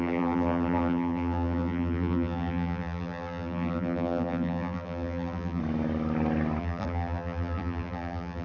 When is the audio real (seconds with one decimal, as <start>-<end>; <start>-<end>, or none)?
5.6-6.6